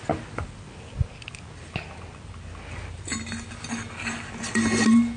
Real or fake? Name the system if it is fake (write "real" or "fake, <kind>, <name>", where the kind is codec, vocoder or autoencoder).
real